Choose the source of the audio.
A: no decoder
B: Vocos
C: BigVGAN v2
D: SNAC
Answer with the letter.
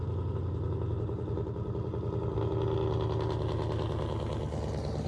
A